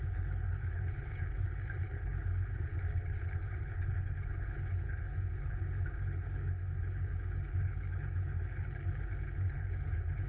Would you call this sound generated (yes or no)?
yes